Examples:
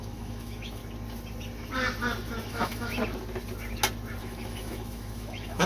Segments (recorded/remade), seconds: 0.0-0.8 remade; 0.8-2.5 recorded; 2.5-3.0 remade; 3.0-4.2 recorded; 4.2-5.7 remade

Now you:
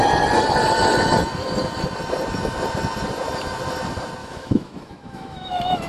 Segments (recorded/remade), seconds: 0.0-4.2 recorded; 4.2-5.9 remade

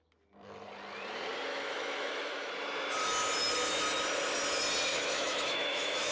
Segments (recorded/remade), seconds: 0.0-1.5 recorded; 1.5-2.5 remade; 2.5-4.9 recorded; 4.9-6.1 remade

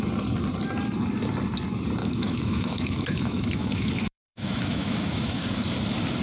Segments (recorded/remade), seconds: 0.0-2.0 recorded; 2.0-5.4 remade; 5.4-6.2 recorded